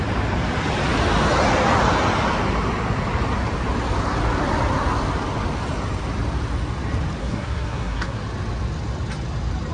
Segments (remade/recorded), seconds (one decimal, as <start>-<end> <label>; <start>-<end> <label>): 0.0-7.2 recorded; 7.2-8.2 remade; 8.2-9.7 recorded